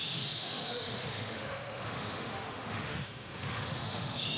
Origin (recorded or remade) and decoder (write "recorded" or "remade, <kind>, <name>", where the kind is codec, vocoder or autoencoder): remade, autoencoder, DAC-VAE